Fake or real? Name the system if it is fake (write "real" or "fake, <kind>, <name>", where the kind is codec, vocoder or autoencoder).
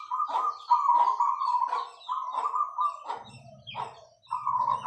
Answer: real